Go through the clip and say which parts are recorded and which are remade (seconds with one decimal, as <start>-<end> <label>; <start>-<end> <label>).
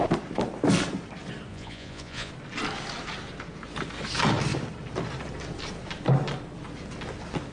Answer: 0.0-1.5 recorded; 1.5-2.3 remade; 2.3-7.5 recorded